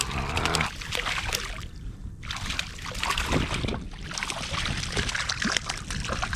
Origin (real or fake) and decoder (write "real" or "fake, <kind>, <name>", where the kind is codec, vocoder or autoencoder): real